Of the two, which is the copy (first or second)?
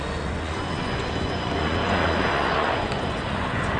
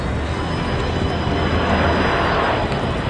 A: first